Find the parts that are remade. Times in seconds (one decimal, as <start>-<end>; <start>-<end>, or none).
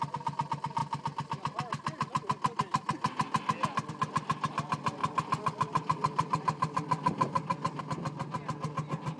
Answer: 5.0-7.8